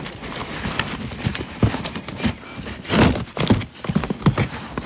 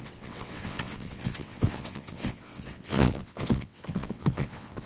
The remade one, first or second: second